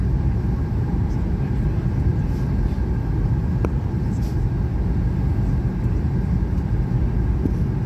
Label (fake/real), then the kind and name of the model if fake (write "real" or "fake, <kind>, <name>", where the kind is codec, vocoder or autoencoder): real